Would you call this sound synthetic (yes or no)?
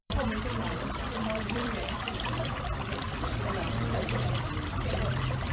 yes